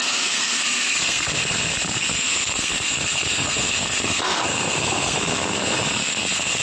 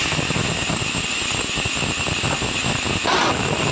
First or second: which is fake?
first